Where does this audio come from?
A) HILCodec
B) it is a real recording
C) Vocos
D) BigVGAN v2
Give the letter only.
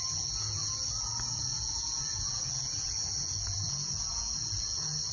C